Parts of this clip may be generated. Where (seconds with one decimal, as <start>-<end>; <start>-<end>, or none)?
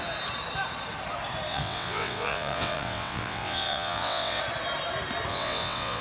1.5-4.4; 5.3-6.0